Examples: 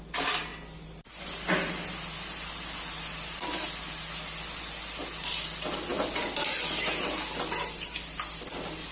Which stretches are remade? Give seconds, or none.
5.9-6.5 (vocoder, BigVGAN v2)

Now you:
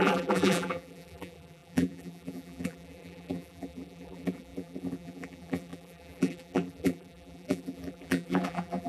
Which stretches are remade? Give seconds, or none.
0.0-8.9 (vocoder, BigVGAN v2)

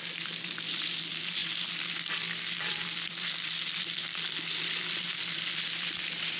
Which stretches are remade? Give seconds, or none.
0.0-6.4 (vocoder, BigVGAN v2)

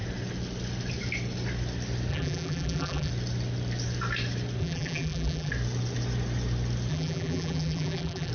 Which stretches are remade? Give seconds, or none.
2.1-3.1 (vocoder, BigVGAN v2); 4.6-5.5; 6.9-8.3

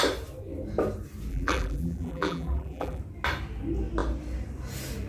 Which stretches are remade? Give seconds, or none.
1.3-3.0 (vocoder, BigVGAN v2)

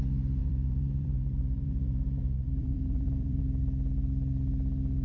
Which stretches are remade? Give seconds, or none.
0.4-3.4 (vocoder, BigVGAN v2)

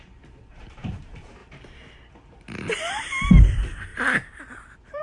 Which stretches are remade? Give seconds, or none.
0.0-1.4 (vocoder, BigVGAN v2); 2.9-3.9